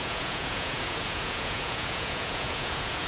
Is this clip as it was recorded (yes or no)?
no